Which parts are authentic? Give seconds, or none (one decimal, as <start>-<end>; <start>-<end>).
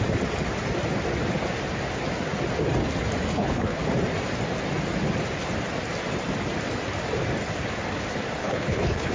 0.0-3.3; 3.8-8.4